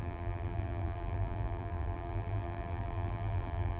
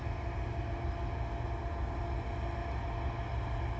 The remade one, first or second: first